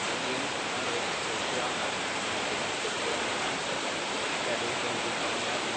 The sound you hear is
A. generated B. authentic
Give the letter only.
A